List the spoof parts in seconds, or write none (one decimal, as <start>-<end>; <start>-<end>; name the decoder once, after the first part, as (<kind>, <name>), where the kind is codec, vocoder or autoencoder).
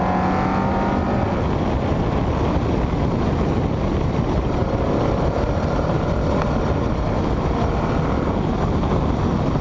none